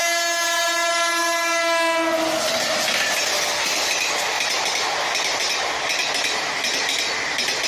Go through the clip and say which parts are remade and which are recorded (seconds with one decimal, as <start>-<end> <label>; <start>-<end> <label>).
0.0-7.7 recorded